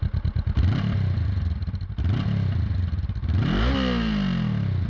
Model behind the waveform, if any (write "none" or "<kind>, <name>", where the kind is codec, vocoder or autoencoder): none